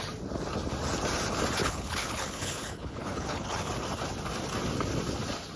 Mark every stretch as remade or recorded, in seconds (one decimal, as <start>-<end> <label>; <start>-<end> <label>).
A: 0.0-1.6 recorded; 1.6-3.7 remade; 3.7-5.6 recorded